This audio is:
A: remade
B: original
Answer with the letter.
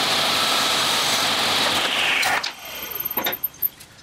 B